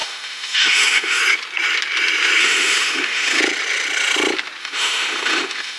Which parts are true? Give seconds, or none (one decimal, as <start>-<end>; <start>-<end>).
1.2-2.4; 3.4-4.6